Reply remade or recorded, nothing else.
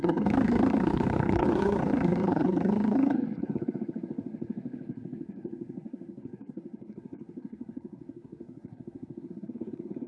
remade